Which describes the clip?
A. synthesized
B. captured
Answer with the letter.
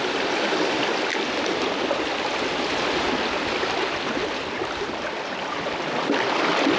B